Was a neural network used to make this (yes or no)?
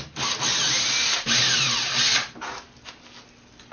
no